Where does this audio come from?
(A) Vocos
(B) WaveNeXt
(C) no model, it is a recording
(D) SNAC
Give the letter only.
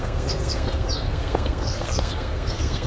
D